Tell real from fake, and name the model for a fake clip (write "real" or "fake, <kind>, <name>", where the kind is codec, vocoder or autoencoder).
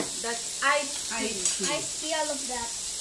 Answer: real